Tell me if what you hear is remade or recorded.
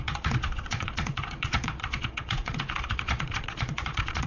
remade